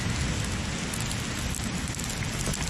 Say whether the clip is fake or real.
real